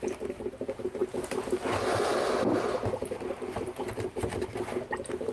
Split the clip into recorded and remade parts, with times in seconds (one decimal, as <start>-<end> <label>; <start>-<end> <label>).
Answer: 0.0-2.1 recorded; 2.1-5.3 remade